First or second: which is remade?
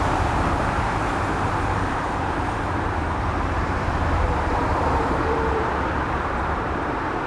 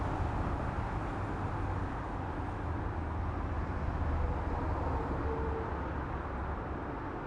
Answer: first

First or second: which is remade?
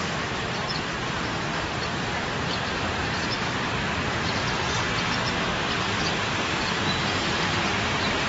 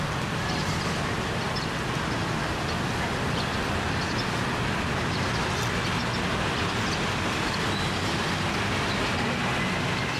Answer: first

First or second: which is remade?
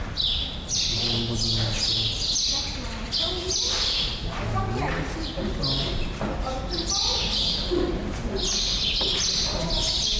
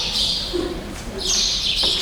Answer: second